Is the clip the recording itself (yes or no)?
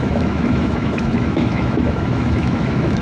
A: no